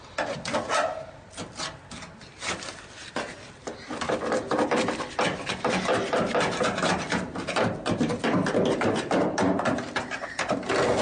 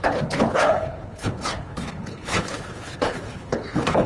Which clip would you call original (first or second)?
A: first